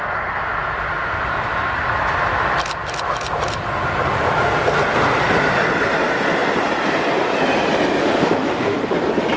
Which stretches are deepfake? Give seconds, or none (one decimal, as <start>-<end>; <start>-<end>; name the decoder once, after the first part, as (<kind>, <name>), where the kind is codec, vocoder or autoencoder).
8.0-8.9 (autoencoder, DAC-VAE)